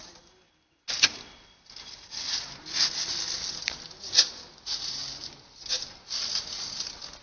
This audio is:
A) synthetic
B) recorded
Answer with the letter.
B